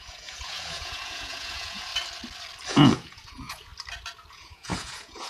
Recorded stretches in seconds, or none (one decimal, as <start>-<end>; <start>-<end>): 1.9-2.7; 3.7-4.3